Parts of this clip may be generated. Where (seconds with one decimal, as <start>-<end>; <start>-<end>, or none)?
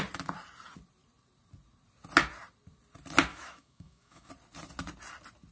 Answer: 3.3-4.3